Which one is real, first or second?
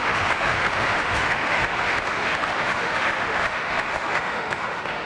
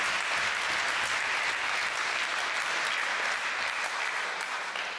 second